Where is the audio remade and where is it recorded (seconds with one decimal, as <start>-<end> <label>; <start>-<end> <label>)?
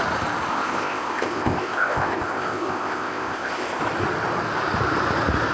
0.0-0.5 recorded; 0.5-3.8 remade; 3.8-5.5 recorded